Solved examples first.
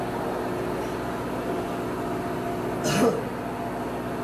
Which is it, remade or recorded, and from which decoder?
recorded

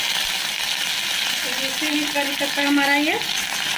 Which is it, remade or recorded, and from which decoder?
recorded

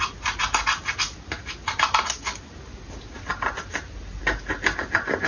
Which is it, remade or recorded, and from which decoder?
recorded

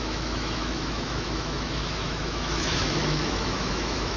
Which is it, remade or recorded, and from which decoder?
remade, autoencoder, DAC-VAE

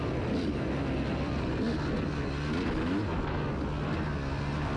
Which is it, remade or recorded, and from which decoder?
recorded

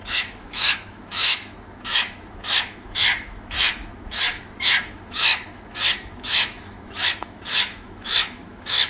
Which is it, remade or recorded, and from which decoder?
remade, autoencoder, DAC-VAE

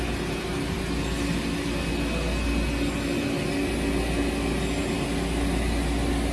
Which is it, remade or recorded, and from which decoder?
recorded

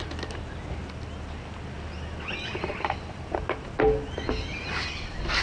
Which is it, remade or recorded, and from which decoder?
recorded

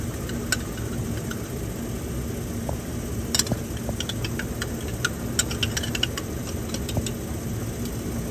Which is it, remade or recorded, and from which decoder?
recorded